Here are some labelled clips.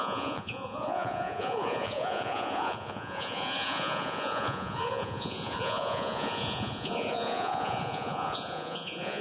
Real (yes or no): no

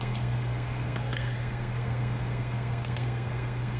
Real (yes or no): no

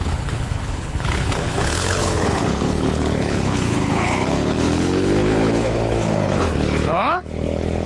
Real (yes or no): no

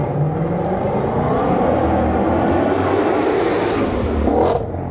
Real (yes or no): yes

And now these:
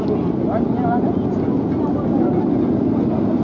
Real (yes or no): yes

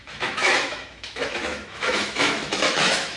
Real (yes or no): no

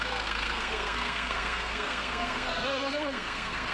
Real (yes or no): no